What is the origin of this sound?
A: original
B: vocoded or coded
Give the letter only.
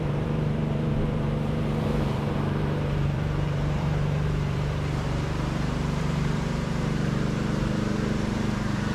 B